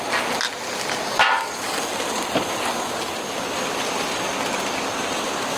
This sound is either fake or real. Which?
real